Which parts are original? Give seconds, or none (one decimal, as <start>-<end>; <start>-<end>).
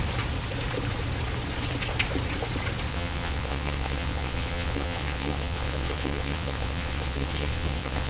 0.0-2.9